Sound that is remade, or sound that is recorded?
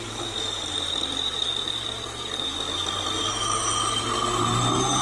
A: recorded